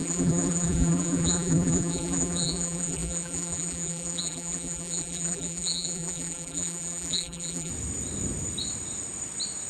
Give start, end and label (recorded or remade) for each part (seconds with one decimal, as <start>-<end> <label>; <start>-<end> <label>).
0.0-7.7 remade; 7.7-9.7 recorded